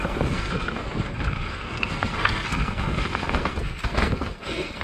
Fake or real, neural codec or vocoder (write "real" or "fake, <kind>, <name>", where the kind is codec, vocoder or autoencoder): fake, codec, SNAC